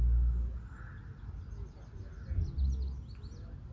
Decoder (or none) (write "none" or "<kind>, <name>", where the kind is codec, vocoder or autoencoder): none